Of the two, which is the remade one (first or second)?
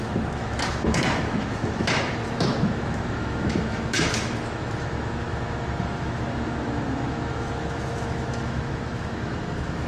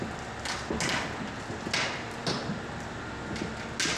first